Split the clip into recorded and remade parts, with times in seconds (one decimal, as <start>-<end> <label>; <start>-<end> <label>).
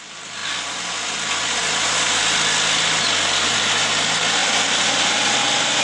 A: 0.0-4.4 recorded; 4.4-5.8 remade